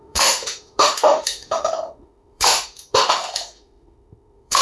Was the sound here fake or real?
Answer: fake